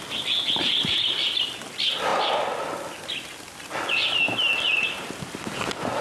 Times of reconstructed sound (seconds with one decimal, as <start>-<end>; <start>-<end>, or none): none